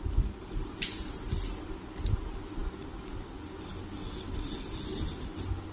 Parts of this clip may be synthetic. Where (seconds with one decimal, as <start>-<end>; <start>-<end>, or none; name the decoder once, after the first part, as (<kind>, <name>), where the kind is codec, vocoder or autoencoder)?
none